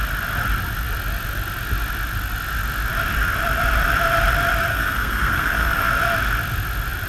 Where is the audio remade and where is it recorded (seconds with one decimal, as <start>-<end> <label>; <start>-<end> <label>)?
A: 0.0-4.7 recorded; 4.7-5.9 remade; 5.9-7.1 recorded